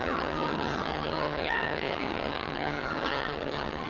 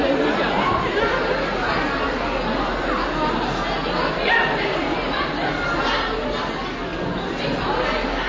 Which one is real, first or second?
second